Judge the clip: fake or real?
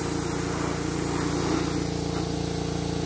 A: real